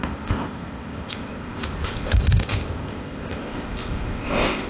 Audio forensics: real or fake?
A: fake